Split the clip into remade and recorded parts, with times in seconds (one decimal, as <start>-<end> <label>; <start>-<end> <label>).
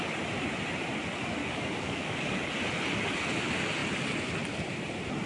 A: 0.0-1.4 recorded; 1.4-2.5 remade; 2.5-5.3 recorded